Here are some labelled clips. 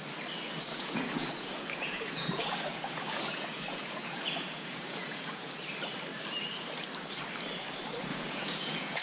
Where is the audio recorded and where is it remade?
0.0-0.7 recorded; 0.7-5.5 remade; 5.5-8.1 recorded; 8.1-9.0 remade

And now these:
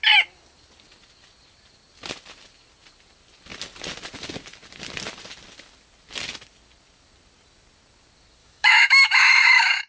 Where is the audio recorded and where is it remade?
0.0-8.4 recorded; 8.4-9.9 remade

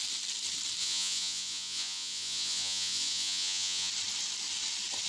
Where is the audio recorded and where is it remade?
0.0-0.8 recorded; 0.8-3.9 remade; 3.9-5.1 recorded

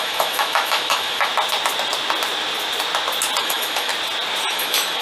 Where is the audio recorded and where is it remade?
0.0-1.3 remade; 1.3-3.4 recorded; 3.4-3.9 remade; 3.9-4.5 recorded; 4.5-5.0 remade

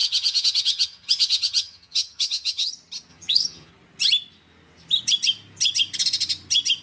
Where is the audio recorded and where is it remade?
0.0-2.7 remade; 2.7-3.1 recorded; 3.1-3.7 remade; 3.7-6.8 recorded

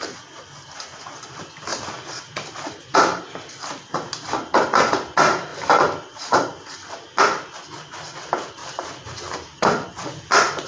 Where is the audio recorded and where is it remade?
0.0-5.5 recorded; 5.5-7.6 remade; 7.6-8.6 recorded; 8.6-9.6 remade; 9.6-10.7 recorded

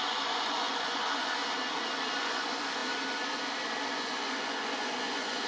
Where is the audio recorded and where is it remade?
0.0-1.4 remade; 1.4-2.2 recorded; 2.2-2.8 remade; 2.8-3.9 recorded; 3.9-5.5 remade